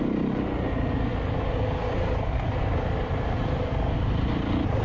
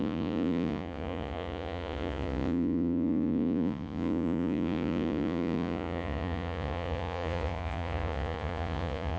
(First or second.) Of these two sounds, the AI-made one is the second